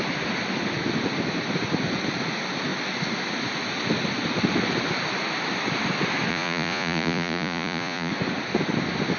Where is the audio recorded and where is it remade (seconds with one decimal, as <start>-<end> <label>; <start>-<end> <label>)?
0.0-6.3 recorded; 6.3-8.1 remade; 8.1-9.2 recorded